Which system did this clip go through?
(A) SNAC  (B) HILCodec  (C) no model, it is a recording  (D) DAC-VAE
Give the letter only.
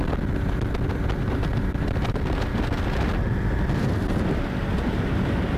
C